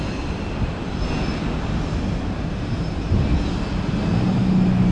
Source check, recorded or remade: recorded